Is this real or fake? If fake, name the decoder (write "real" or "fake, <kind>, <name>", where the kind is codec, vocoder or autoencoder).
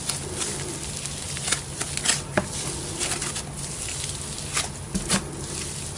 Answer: real